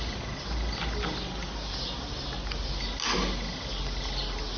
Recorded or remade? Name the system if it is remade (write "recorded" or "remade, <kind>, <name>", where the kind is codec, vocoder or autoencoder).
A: recorded